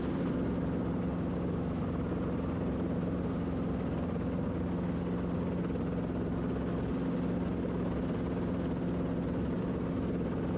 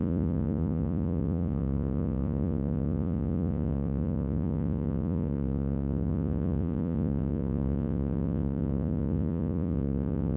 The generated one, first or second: second